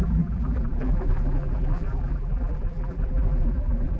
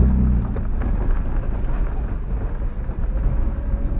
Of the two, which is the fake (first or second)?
first